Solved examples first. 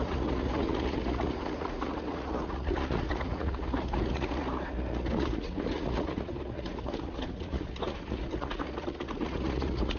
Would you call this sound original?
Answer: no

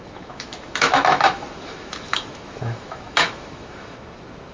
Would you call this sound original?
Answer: no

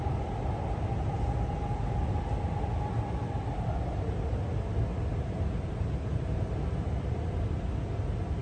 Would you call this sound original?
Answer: yes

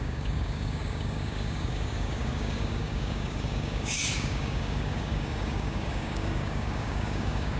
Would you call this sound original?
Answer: no